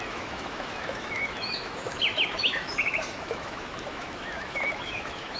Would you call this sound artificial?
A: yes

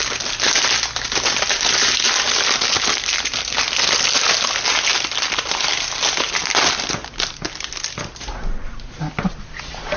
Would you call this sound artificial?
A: no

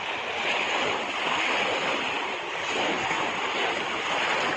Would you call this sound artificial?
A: no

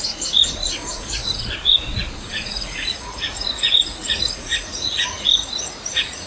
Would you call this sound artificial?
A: yes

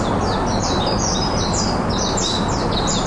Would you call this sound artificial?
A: no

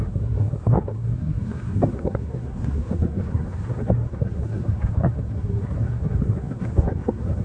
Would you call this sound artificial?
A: yes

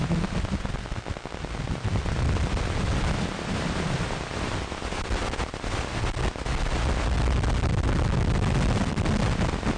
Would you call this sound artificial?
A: no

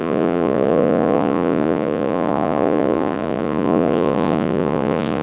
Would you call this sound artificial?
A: yes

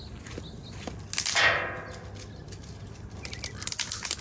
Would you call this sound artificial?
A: no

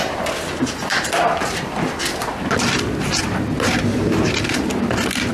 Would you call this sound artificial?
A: yes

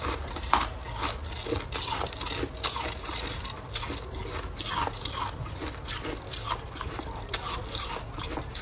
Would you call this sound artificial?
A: no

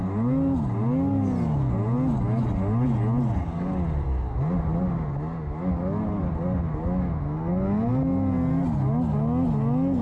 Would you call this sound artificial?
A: no